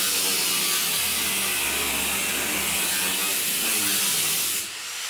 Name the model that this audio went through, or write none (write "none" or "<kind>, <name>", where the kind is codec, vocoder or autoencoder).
none